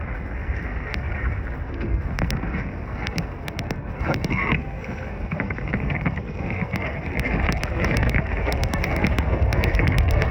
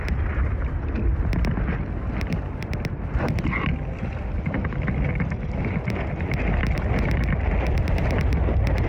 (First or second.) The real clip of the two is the second